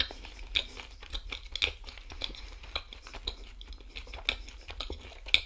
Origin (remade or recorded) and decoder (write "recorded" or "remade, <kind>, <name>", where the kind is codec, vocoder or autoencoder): recorded